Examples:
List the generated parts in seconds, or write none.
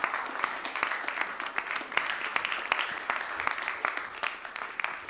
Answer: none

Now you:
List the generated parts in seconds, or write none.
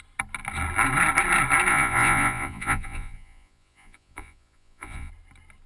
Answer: 1.7-5.1 (vocoder, Vocos)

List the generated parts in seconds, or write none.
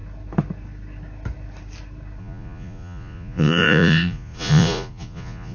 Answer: 2.2-5.5 (vocoder, Vocos)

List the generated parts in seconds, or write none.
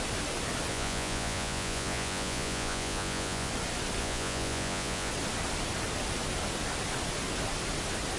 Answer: 0.7-3.5 (vocoder, Vocos); 4.0-5.1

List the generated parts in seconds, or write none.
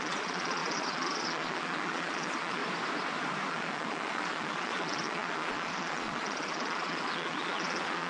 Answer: 0.0-2.6 (vocoder, Vocos); 3.5-8.1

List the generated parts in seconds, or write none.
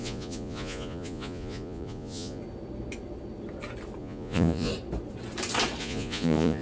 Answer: 0.0-2.4 (vocoder, Vocos); 4.0-4.7; 5.8-6.6